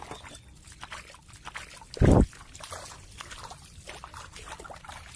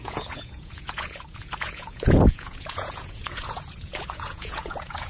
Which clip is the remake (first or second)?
second